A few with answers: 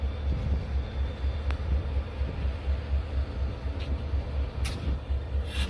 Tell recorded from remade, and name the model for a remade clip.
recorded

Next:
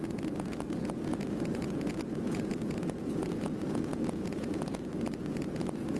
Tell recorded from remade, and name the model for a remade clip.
remade, vocoder, Vocos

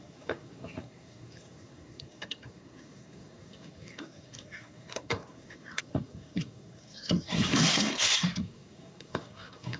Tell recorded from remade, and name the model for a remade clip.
remade, codec, SNAC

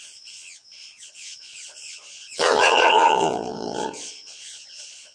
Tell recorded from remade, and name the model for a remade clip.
remade, vocoder, Vocos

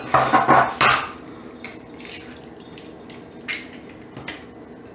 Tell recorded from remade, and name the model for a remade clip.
recorded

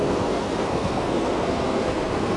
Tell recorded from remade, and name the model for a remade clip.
remade, codec, SNAC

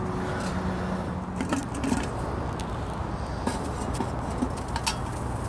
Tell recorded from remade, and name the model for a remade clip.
recorded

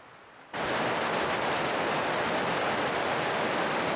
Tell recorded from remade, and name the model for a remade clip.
recorded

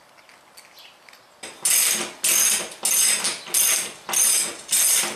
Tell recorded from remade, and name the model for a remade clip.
recorded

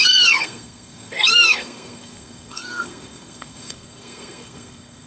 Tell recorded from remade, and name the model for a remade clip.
remade, codec, SNAC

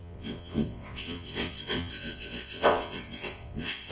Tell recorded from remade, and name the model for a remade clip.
remade, vocoder, WaveNeXt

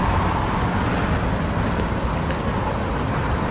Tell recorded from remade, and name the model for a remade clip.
recorded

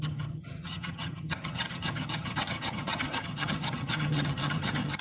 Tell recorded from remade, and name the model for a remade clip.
remade, vocoder, HiFi-GAN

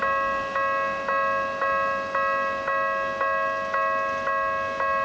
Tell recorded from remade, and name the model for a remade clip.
recorded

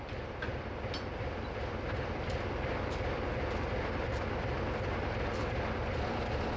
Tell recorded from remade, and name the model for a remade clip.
remade, vocoder, BigVGAN v2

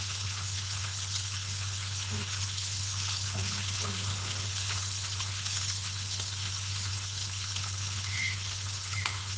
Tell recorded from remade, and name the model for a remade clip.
remade, codec, HILCodec